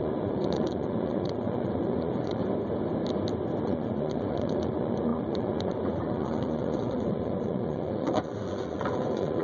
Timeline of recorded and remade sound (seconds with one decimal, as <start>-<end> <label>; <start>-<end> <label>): 0.0-2.4 remade; 2.4-3.6 recorded; 3.6-9.4 remade